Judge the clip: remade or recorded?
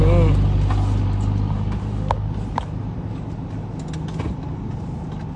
recorded